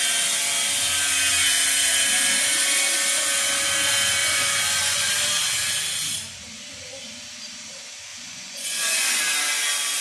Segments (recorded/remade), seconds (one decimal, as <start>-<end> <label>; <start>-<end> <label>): 0.0-4.2 recorded; 4.2-5.1 remade; 5.1-8.1 recorded; 8.1-9.2 remade; 9.2-10.0 recorded

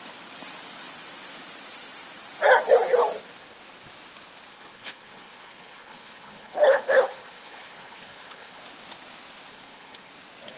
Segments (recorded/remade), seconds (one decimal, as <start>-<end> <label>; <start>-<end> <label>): 0.0-4.5 recorded; 4.5-8.6 remade; 8.6-9.5 recorded; 9.5-10.1 remade; 10.1-10.6 recorded

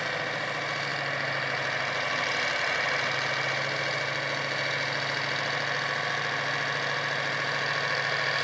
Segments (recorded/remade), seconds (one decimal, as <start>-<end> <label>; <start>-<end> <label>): 0.0-8.4 recorded

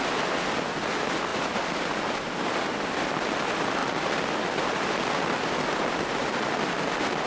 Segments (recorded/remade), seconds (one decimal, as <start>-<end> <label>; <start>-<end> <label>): 0.0-7.3 recorded

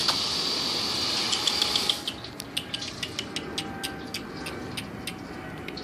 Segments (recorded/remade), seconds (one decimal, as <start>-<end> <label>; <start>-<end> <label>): 0.0-5.8 recorded

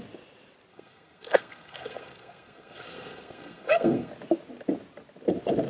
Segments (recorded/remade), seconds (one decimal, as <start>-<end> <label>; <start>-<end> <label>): 0.0-0.7 recorded; 0.7-4.1 remade; 4.1-5.7 recorded

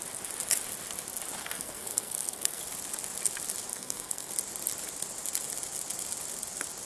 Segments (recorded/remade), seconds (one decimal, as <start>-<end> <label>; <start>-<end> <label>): 0.0-1.4 recorded; 1.4-2.6 remade; 2.6-3.7 recorded; 3.7-4.3 remade; 4.3-6.9 recorded